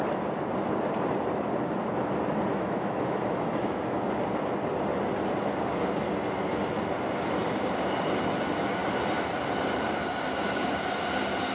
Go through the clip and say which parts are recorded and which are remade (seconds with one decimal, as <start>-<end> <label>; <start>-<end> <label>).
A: 0.0-2.5 recorded; 2.5-4.0 remade; 4.0-11.5 recorded